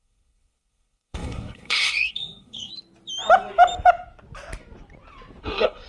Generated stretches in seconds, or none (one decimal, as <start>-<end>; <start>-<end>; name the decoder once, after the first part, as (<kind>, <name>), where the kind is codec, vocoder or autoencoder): 0.0-2.7 (codec, SNAC); 5.4-5.9